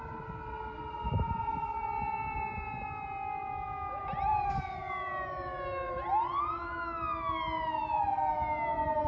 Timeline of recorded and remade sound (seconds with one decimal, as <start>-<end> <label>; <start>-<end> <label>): 0.0-9.1 recorded